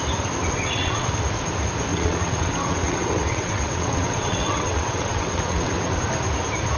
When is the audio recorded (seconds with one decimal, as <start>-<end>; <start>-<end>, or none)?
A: 0.0-0.4; 1.1-1.9; 6.0-6.8